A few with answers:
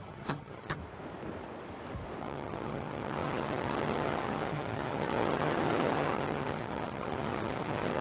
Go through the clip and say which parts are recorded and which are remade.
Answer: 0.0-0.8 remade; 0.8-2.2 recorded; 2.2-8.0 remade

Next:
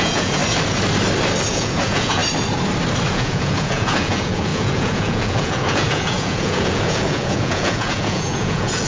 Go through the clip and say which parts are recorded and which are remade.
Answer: 0.0-0.4 remade; 0.4-1.5 recorded; 1.5-2.2 remade; 2.2-3.1 recorded; 3.1-8.9 remade

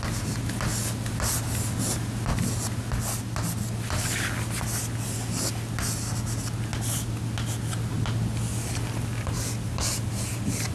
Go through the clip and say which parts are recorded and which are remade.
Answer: 0.0-10.7 recorded